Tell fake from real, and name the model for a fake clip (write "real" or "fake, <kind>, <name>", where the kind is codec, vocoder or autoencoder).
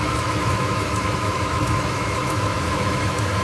fake, autoencoder, DAC-VAE